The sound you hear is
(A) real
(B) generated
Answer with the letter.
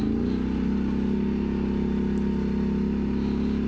A